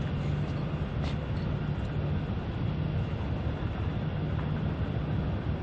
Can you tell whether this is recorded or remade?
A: recorded